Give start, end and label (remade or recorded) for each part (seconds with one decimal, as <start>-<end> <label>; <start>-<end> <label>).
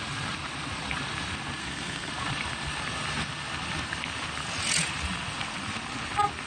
0.0-1.6 recorded; 1.6-2.1 remade; 2.1-6.5 recorded